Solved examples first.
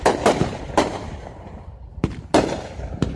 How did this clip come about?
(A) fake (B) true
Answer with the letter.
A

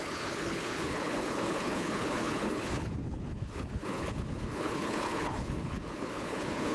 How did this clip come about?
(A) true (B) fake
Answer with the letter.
B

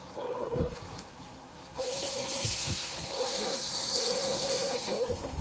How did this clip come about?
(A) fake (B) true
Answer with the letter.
A